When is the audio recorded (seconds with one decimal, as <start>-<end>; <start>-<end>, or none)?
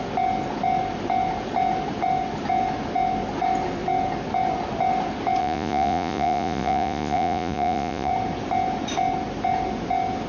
0.0-5.4; 8.1-10.3